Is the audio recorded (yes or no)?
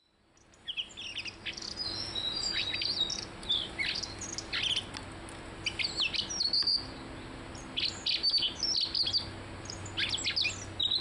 yes